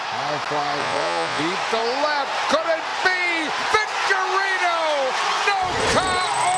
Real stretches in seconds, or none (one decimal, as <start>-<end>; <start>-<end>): 0.0-0.8; 1.4-6.6

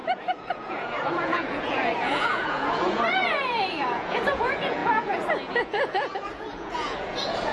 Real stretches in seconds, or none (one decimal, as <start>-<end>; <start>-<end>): none